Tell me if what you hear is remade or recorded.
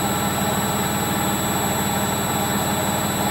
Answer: recorded